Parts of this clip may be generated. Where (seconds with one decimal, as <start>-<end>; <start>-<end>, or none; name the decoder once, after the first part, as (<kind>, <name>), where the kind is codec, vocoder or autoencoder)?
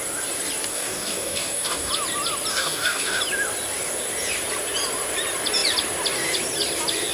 0.7-1.9 (codec, DAC); 2.5-3.2